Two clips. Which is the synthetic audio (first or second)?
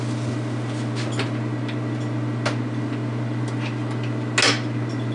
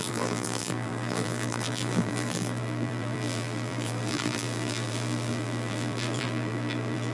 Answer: second